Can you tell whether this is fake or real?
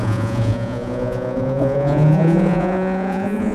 fake